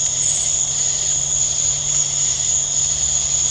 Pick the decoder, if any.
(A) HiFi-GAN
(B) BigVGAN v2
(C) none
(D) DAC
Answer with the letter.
C